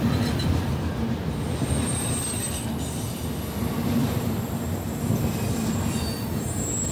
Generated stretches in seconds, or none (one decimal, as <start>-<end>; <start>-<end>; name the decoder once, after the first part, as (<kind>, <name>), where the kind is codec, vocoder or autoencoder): 4.0-4.8 (vocoder, BigVGAN v2)